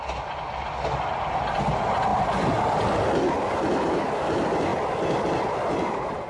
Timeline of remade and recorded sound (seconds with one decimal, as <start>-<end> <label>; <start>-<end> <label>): 0.0-6.3 recorded